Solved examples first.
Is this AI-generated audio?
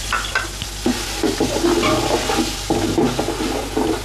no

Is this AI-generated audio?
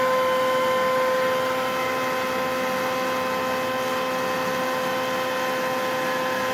no